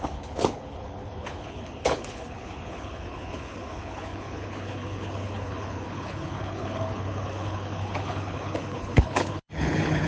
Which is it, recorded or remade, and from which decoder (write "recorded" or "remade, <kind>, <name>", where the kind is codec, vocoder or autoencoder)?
remade, codec, HILCodec